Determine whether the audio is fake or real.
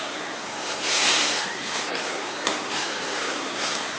fake